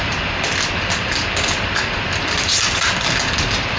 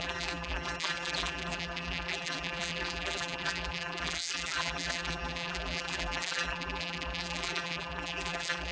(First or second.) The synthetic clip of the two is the second